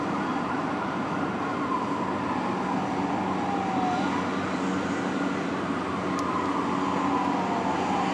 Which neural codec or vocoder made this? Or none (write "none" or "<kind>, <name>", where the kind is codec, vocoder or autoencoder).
none